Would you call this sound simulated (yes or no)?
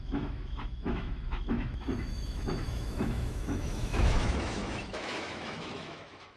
yes